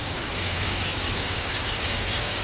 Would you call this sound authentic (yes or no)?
no